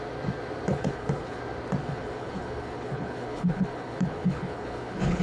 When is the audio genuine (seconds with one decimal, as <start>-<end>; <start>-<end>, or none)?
0.0-0.7; 1.4-1.8